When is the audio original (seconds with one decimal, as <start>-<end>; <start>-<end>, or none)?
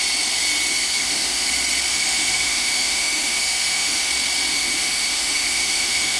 0.0-0.7; 1.5-1.9; 4.1-4.5